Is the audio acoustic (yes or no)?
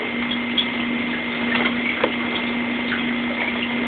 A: yes